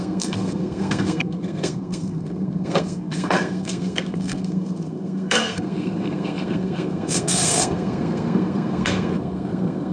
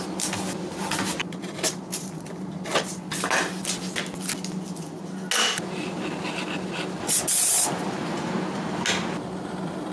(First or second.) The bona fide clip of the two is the second